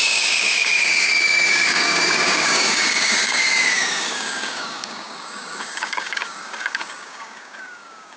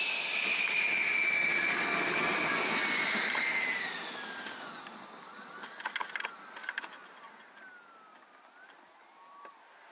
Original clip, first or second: second